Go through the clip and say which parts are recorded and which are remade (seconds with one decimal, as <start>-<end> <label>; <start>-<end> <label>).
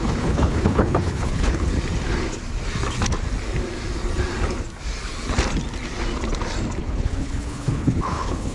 0.0-1.7 remade; 1.7-6.8 recorded; 6.8-8.5 remade